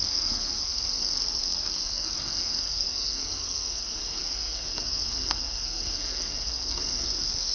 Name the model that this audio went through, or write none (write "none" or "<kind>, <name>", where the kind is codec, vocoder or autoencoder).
codec, SNAC